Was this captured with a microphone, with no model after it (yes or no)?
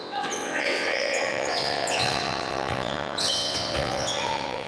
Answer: no